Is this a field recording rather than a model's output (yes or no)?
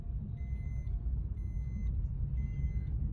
yes